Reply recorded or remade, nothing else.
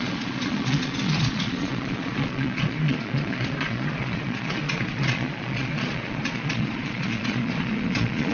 remade